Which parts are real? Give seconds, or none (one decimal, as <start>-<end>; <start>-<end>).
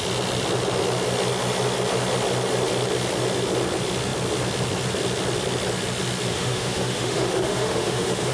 0.0-6.3